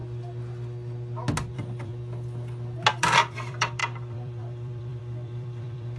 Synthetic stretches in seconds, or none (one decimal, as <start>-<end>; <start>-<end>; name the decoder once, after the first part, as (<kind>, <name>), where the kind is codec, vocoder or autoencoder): 1.5-1.9 (vocoder, BigVGAN v2); 2.9-6.0